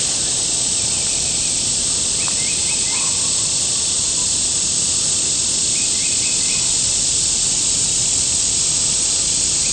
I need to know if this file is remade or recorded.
recorded